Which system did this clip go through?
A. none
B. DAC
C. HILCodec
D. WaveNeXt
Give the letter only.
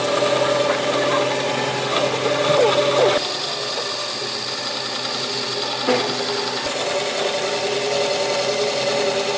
A